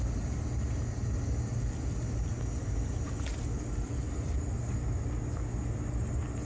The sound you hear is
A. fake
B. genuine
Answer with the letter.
B